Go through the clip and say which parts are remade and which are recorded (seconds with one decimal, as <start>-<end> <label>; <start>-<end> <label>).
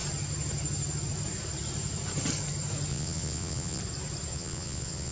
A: 0.0-2.9 recorded; 2.9-3.8 remade; 3.8-4.3 recorded; 4.3-5.1 remade